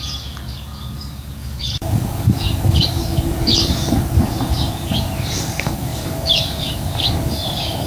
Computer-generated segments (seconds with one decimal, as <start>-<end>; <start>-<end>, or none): 0.0-7.9